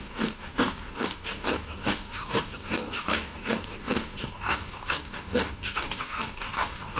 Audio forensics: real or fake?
fake